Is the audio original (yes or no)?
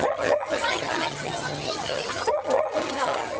no